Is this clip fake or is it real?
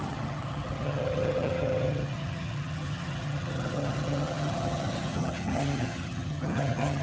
fake